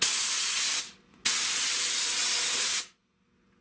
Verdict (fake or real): real